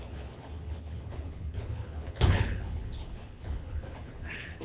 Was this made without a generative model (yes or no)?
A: no